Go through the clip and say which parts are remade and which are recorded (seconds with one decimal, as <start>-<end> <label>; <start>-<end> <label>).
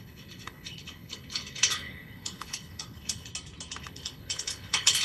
0.0-3.3 remade; 3.3-3.8 recorded; 3.8-5.0 remade